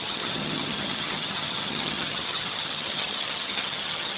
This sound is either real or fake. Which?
fake